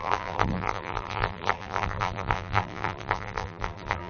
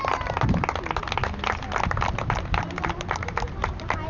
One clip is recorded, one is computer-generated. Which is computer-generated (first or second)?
first